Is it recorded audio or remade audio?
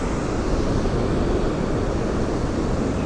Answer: recorded